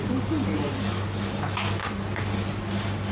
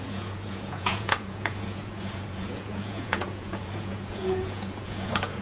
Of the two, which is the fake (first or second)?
second